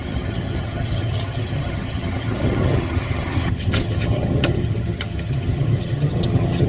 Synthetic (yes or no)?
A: yes